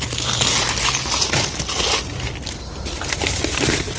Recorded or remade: recorded